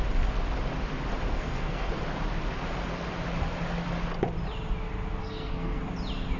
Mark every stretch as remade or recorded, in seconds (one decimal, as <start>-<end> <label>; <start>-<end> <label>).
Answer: 0.0-1.3 recorded; 1.3-1.9 remade; 1.9-5.2 recorded; 5.2-5.8 remade; 5.8-6.4 recorded